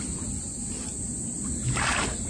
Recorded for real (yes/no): yes